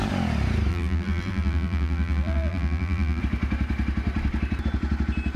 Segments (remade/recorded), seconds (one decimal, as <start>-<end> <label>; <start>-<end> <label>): 0.0-0.7 recorded; 0.7-3.2 remade; 3.2-5.4 recorded